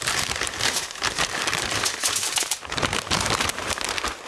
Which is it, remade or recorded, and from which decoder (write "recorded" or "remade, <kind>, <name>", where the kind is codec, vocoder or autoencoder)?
remade, vocoder, BigVGAN v2